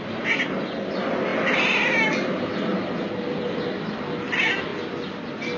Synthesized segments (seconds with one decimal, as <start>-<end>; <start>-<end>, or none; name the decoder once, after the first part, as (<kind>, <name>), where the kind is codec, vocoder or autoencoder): none